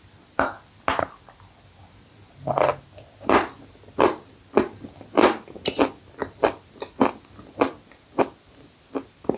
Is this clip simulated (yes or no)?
no